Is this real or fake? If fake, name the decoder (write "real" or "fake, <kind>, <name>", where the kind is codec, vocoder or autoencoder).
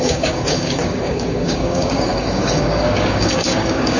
fake, codec, DAC